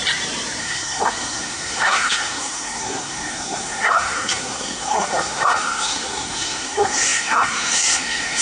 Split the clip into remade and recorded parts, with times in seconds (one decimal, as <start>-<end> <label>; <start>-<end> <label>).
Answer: 0.0-0.6 recorded; 0.6-8.4 remade